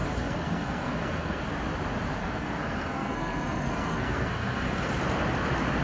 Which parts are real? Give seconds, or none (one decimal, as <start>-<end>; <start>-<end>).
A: 1.4-2.2; 4.9-5.8